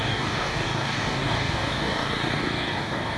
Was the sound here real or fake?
fake